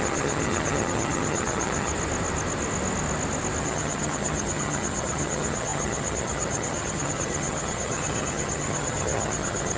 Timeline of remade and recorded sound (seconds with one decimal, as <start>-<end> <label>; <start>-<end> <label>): 0.0-1.9 remade; 1.9-3.6 recorded; 3.6-9.8 remade